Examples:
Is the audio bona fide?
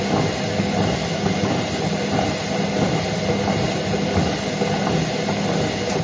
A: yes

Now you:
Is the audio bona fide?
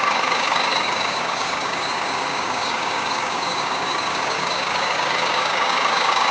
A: no